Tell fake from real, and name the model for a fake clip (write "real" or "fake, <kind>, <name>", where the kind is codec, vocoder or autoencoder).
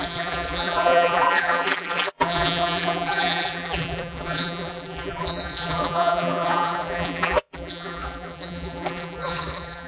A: fake, vocoder, BigVGAN v2